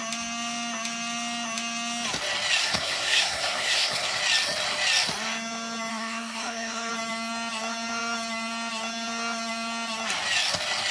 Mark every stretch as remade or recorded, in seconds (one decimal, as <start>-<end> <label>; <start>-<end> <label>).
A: 0.0-2.6 recorded; 2.6-4.2 remade; 4.2-5.9 recorded; 5.9-6.9 remade; 6.9-10.9 recorded